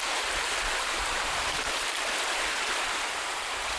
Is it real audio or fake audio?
fake